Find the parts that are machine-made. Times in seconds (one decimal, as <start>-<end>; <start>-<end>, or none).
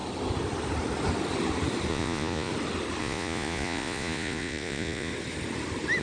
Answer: 1.9-2.5; 3.0-5.1